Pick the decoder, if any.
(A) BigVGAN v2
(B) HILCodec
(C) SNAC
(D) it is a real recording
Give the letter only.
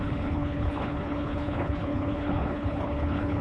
B